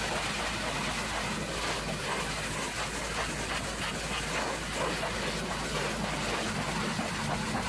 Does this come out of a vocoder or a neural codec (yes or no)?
no